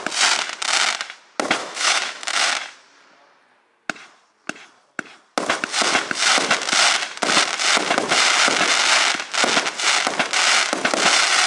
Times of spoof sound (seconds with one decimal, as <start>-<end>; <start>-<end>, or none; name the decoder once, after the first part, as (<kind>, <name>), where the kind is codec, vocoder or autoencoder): 1.6-2.5 (autoencoder, DAC-VAE)